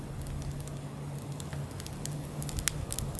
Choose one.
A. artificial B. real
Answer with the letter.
B